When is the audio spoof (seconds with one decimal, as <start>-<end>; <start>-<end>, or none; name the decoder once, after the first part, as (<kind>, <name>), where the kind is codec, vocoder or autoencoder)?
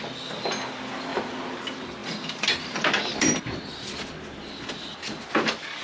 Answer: 2.0-4.7 (vocoder, BigVGAN v2)